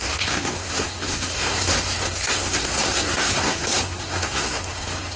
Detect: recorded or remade remade